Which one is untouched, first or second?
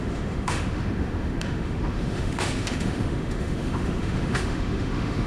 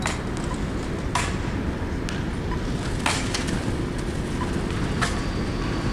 second